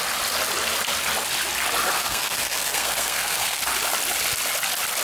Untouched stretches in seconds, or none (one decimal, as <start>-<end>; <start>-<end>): 0.0-2.0; 3.6-5.0